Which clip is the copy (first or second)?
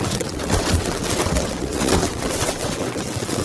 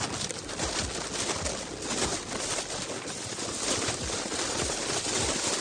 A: first